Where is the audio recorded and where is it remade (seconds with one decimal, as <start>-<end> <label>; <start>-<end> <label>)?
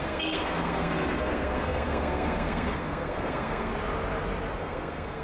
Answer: 0.0-3.7 remade; 3.7-4.6 recorded; 4.6-5.2 remade